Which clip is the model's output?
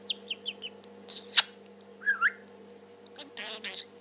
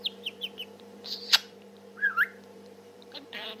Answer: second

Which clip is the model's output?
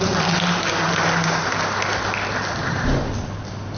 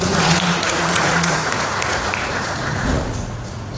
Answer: second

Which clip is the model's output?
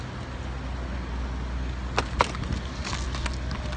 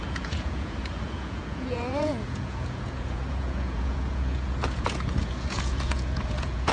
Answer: second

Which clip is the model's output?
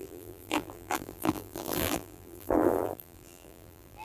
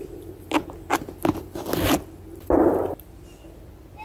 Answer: first